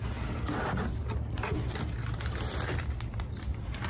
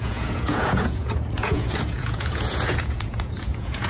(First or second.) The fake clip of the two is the second